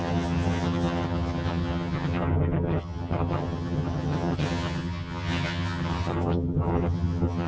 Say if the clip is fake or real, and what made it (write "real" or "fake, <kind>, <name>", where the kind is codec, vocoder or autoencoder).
fake, vocoder, HiFi-GAN